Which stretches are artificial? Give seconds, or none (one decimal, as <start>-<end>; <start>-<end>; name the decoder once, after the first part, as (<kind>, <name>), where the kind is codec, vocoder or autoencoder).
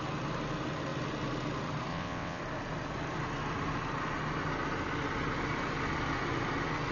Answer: 1.9-2.4 (vocoder, WaveNeXt)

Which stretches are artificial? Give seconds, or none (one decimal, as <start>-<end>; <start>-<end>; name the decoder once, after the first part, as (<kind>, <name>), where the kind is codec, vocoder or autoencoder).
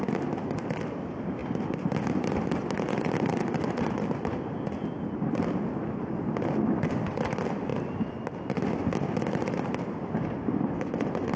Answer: none